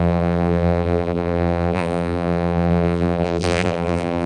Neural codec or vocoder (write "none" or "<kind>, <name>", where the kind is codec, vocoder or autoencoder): vocoder, BigVGAN v2